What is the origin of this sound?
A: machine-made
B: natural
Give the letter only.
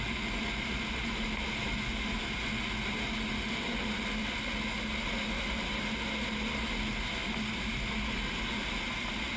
B